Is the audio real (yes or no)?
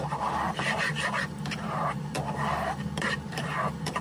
no